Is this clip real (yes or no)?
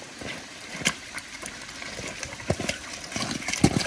yes